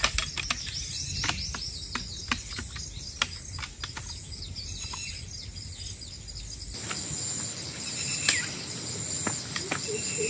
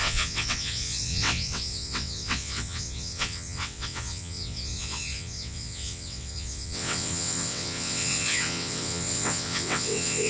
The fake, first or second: second